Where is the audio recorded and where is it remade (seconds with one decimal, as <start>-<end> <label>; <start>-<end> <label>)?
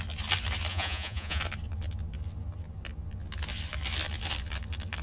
0.0-0.7 recorded; 0.7-1.4 remade; 1.4-5.0 recorded